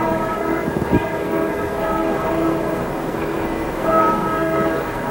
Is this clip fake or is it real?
fake